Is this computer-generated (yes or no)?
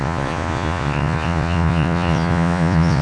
yes